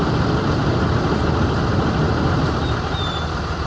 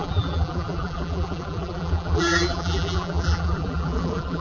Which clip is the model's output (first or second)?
second